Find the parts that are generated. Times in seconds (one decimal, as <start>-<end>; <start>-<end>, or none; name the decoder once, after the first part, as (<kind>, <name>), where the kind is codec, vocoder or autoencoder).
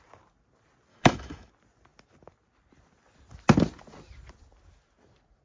0.9-1.5 (autoencoder, DAC-VAE)